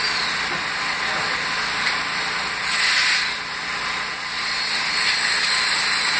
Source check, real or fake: real